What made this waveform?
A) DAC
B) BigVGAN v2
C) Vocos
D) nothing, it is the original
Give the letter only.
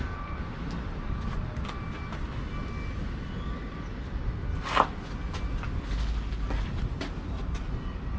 D